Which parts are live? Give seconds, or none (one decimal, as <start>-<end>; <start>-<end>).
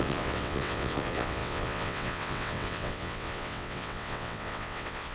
none